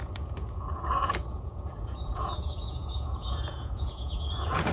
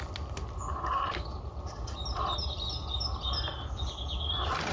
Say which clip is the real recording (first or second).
second